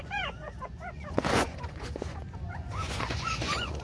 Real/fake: fake